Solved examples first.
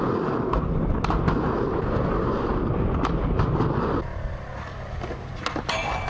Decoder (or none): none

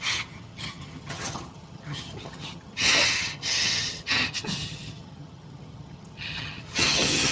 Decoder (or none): vocoder, HiFi-GAN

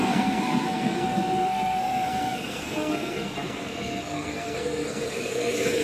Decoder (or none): codec, SNAC